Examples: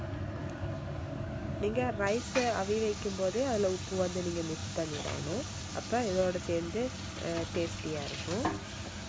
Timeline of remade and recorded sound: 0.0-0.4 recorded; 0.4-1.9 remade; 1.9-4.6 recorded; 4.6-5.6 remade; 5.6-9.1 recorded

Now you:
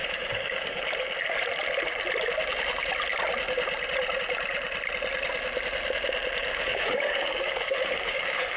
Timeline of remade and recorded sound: 0.0-0.8 remade; 0.8-6.5 recorded; 6.5-8.6 remade